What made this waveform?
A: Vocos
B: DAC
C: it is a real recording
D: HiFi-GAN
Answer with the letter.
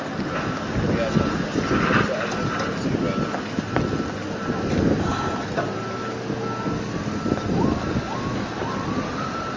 C